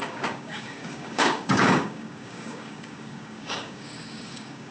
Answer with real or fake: fake